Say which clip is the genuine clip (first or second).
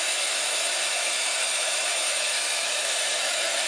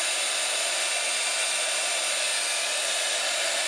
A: second